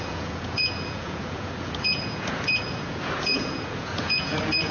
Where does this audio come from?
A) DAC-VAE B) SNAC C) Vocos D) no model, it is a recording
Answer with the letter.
C